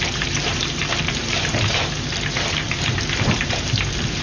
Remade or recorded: remade